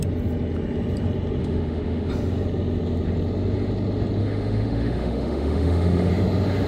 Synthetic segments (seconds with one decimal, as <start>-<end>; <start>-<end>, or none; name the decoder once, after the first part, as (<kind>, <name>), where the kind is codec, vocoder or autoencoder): 1.4-2.1 (autoencoder, DAC-VAE); 4.2-6.1